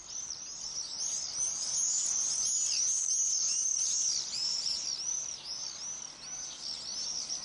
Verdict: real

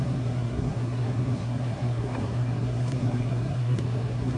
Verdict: fake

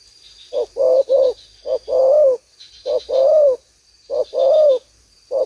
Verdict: fake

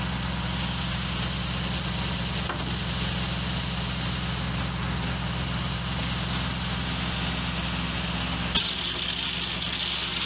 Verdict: real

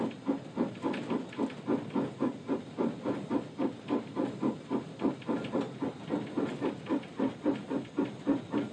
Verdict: real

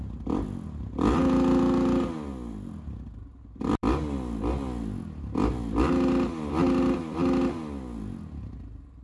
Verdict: real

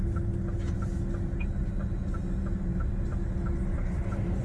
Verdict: real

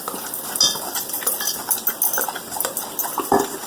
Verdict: real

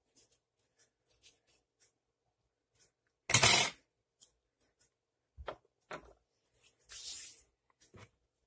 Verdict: real